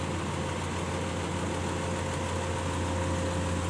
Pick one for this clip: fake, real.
real